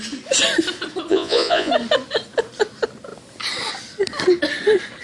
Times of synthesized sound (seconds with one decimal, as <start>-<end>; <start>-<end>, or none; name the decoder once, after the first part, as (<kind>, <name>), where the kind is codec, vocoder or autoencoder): 1.1-1.7 (vocoder, Vocos)